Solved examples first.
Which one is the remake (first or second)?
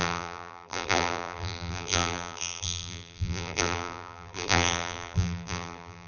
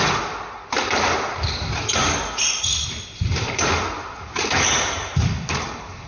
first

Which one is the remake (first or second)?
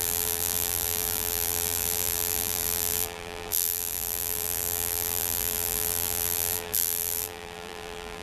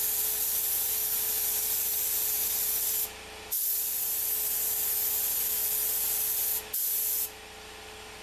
first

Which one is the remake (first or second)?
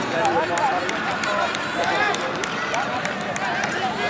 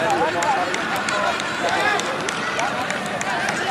second